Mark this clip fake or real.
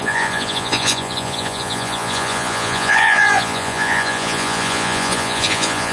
fake